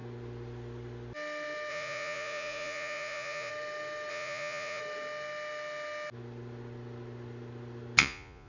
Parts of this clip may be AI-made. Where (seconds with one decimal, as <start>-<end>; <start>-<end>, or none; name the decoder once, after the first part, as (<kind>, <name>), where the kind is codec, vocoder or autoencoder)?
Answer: 1.7-3.5 (vocoder, Vocos); 4.1-4.8; 8.0-8.5